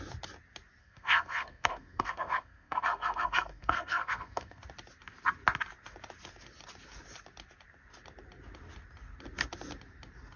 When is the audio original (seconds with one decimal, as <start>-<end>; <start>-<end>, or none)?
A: 0.0-0.8; 4.6-10.4